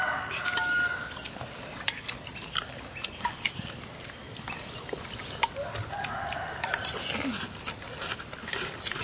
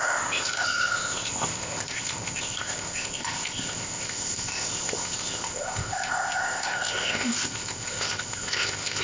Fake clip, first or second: second